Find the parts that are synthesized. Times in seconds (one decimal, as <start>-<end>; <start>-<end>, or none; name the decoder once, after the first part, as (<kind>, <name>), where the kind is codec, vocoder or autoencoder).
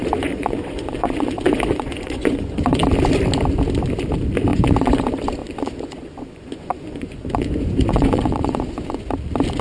0.0-2.8 (vocoder, Vocos); 4.5-5.0; 5.4-9.0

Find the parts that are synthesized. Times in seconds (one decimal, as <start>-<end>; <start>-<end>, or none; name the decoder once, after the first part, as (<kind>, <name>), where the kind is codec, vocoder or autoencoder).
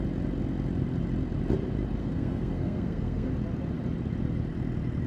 2.0-3.3 (codec, SNAC)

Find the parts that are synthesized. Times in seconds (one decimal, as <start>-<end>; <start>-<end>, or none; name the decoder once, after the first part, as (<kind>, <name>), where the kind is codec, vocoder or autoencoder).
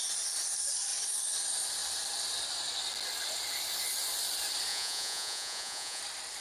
4.7-6.0 (vocoder, Vocos)